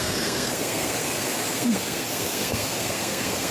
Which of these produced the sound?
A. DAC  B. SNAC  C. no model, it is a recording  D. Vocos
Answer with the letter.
B